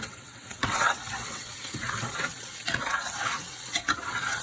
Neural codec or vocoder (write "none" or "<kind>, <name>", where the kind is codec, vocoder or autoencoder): vocoder, WaveNeXt